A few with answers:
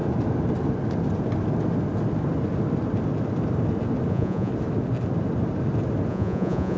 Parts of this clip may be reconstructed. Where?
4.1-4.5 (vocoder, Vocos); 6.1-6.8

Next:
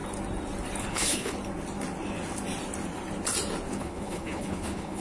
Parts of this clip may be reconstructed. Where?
0.8-1.4 (codec, HILCodec); 3.7-5.0

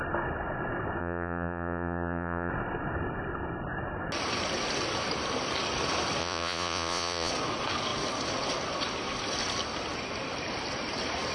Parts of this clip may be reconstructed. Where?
1.0-2.5 (vocoder, Vocos); 6.2-7.3

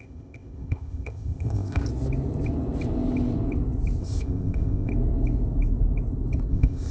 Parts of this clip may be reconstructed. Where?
0.0-1.8 (codec, ZipCodec); 4.0-4.9; 6.5-6.9

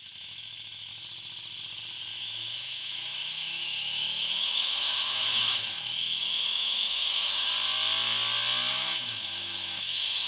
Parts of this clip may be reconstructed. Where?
0.0-0.9 (autoencoder, DAC-VAE); 2.1-7.5; 8.7-10.3

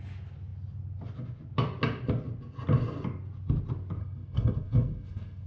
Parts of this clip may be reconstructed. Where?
4.0-5.5 (codec, SNAC)

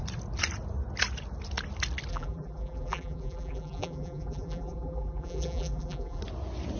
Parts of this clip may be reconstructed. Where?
2.1-6.2 (vocoder, BigVGAN v2)

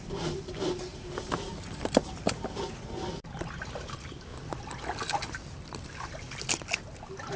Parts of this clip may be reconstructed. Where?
0.9-2.1 (vocoder, BigVGAN v2); 4.3-6.5